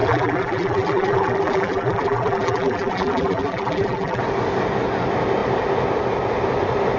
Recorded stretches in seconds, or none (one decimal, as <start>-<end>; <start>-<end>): 4.2-7.0